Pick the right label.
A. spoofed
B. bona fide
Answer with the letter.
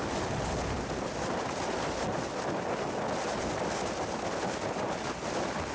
B